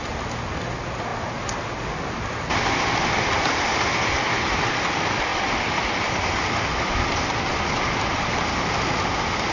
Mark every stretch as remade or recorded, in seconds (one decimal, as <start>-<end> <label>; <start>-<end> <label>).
0.0-9.5 recorded